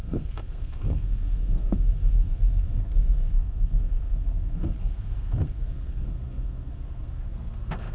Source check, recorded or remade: remade